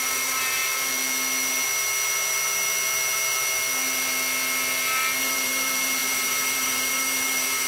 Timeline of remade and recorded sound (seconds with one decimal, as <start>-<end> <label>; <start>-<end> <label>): 0.0-0.6 remade; 0.6-5.2 recorded; 5.2-7.7 remade